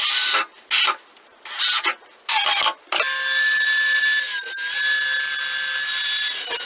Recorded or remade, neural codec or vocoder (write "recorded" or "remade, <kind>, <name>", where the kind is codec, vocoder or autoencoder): recorded